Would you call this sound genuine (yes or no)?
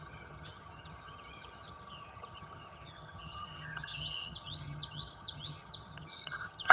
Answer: no